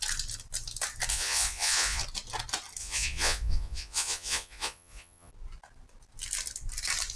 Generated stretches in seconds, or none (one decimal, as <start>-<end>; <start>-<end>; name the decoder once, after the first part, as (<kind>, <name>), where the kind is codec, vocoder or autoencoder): 1.1-2.0 (vocoder, Vocos); 2.8-5.3